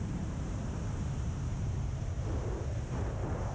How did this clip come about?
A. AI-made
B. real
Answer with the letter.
A